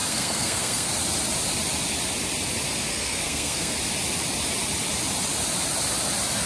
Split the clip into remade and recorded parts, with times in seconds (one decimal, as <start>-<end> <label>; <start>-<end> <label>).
0.0-0.9 remade; 0.9-2.9 recorded; 2.9-3.7 remade; 3.7-6.5 recorded